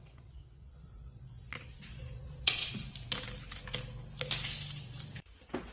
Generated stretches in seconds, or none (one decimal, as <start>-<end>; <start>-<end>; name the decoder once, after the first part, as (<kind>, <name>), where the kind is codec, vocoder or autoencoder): 0.0-2.9 (vocoder, Vocos)